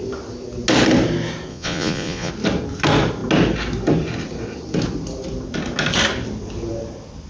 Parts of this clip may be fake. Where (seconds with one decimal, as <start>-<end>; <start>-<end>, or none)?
1.5-2.3